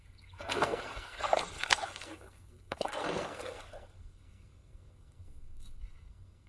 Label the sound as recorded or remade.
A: remade